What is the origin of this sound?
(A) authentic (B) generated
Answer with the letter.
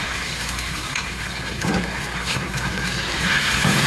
B